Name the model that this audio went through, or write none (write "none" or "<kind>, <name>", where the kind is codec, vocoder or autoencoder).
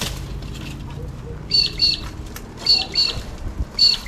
none